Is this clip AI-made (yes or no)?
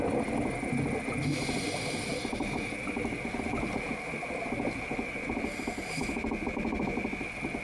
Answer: no